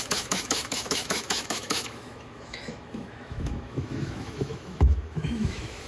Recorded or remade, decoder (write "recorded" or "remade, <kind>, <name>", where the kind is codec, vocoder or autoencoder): remade, autoencoder, DAC-VAE